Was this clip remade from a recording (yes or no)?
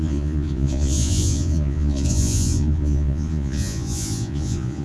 yes